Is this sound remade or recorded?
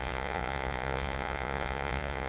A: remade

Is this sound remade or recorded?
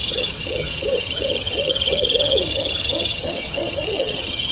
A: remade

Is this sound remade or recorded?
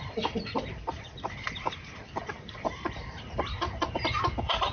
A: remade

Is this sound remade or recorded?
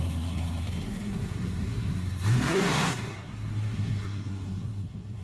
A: remade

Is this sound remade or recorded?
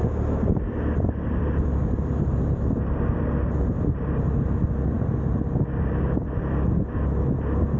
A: recorded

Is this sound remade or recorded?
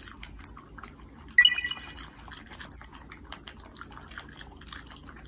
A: recorded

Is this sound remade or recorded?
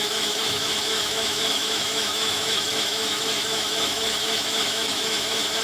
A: remade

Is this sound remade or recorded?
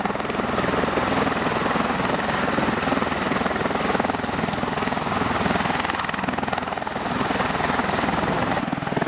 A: recorded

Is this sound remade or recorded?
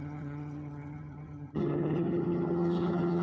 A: remade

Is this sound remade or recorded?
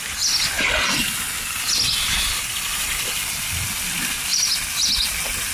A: recorded